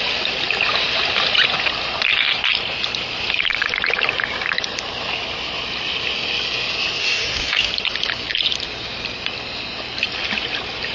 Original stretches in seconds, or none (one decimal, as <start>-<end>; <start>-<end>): 0.0-7.0; 7.7-10.9